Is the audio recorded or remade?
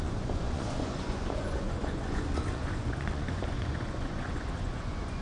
remade